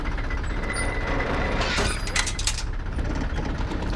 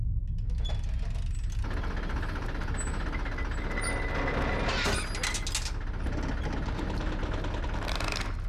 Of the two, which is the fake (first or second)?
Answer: first